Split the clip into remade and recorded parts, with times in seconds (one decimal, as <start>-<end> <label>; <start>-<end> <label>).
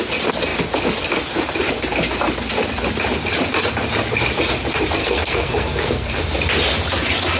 0.0-5.0 recorded; 5.0-6.2 remade; 6.2-7.4 recorded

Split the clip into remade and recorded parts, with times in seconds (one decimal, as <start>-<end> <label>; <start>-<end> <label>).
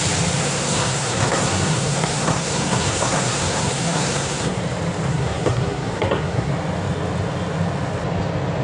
0.0-0.4 recorded; 0.4-4.6 remade; 4.6-5.1 recorded; 5.1-6.5 remade; 6.5-8.6 recorded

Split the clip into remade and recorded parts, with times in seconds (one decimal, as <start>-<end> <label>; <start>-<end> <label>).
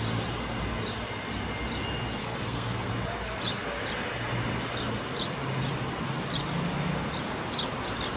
0.0-2.2 recorded; 2.2-2.9 remade; 2.9-8.2 recorded